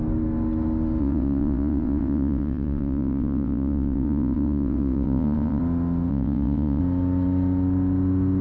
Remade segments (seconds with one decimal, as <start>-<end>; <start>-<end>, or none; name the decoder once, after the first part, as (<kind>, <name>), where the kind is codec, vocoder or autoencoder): 1.0-5.6 (vocoder, WaveNeXt); 6.1-6.8